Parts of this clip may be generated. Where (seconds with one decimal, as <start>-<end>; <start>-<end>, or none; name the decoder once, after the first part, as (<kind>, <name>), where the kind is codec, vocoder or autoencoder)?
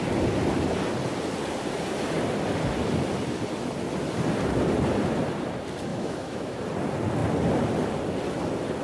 5.9-6.6 (autoencoder, DAC-VAE)